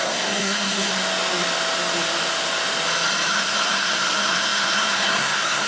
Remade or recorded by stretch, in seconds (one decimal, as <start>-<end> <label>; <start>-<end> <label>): 0.0-0.9 remade; 0.9-3.3 recorded; 3.3-5.7 remade